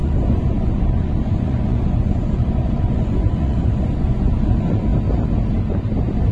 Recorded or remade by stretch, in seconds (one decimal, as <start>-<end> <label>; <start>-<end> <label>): 0.0-4.9 remade; 4.9-6.3 recorded

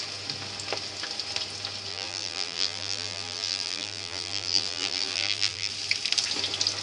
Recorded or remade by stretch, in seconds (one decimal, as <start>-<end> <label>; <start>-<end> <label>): 0.0-1.9 recorded; 1.9-5.7 remade; 5.7-6.8 recorded

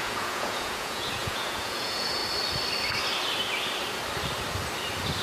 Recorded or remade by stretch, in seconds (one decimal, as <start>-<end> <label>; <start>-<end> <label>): 0.0-2.2 remade; 2.2-5.2 recorded

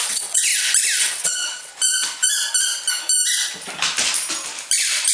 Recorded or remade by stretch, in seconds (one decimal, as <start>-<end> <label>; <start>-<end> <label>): 0.0-0.5 remade; 0.5-1.0 recorded; 1.0-1.7 remade; 1.7-5.1 recorded

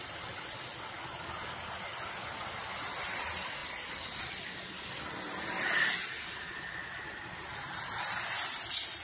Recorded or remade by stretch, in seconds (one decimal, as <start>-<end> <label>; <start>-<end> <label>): 0.0-9.0 recorded

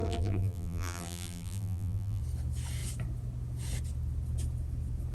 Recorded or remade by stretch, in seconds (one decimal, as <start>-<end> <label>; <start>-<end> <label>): 0.0-2.2 remade; 2.2-5.1 recorded

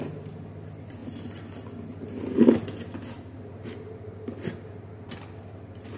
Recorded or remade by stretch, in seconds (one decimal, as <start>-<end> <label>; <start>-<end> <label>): 0.0-6.0 recorded

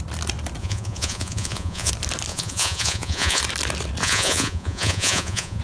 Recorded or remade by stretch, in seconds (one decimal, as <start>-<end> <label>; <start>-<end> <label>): 0.0-0.6 recorded; 0.6-1.9 remade; 1.9-2.3 recorded; 2.3-3.4 remade; 3.4-4.0 recorded; 4.0-5.6 remade